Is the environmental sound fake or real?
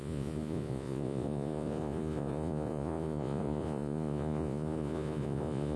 fake